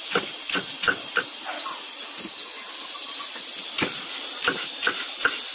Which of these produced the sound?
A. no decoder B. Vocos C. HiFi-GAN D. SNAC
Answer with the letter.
A